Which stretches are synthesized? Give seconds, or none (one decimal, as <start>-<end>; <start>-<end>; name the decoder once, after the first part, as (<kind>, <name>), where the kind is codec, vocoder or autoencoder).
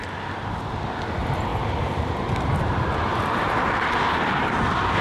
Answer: 1.5-4.5 (vocoder, BigVGAN v2)